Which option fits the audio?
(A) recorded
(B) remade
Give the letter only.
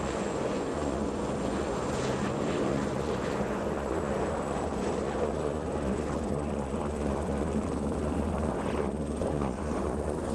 B